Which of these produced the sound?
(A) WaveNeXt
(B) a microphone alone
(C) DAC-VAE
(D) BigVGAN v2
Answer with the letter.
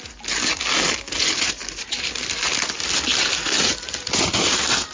B